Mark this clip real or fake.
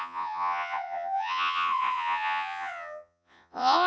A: fake